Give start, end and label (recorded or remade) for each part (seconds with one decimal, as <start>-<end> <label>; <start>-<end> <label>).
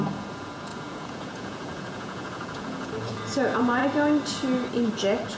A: 0.0-3.8 remade; 3.8-5.4 recorded